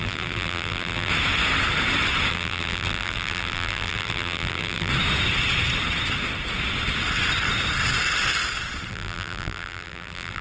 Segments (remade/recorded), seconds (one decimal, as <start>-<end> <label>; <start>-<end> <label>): 0.0-1.1 remade; 1.1-2.3 recorded; 2.3-4.9 remade; 4.9-8.9 recorded; 8.9-10.4 remade